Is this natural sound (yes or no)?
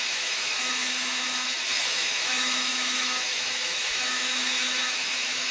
no